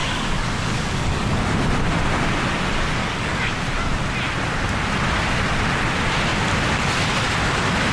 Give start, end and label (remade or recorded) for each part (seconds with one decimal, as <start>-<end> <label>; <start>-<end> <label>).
0.0-1.3 remade; 1.3-3.0 recorded; 3.0-3.5 remade; 3.5-7.9 recorded